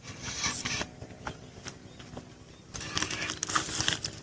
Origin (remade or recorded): recorded